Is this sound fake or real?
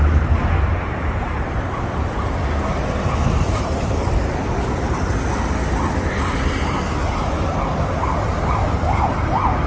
real